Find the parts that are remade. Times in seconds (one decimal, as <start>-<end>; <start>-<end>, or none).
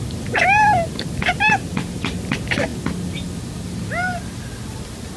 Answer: none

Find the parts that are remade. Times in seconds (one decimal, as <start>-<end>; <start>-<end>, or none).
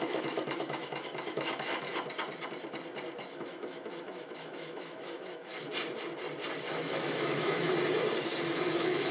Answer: 0.0-1.9; 3.3-5.5; 6.7-7.7; 8.7-9.1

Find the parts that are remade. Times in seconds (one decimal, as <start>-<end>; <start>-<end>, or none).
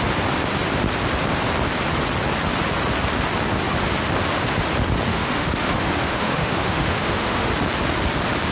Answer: 5.1-7.5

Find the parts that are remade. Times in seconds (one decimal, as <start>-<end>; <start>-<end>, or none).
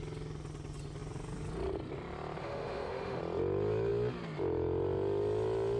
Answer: 2.4-3.2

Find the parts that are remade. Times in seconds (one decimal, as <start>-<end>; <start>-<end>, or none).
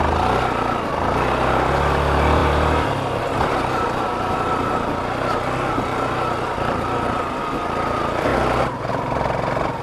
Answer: none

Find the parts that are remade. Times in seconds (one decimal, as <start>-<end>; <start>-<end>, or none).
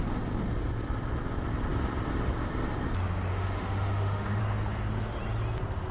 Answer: 3.3-4.4